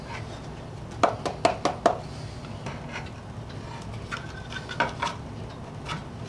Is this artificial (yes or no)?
no